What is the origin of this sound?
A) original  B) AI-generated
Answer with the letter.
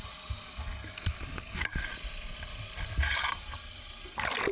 A